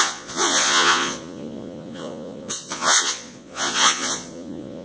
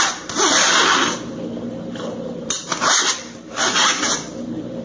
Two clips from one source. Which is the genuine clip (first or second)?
second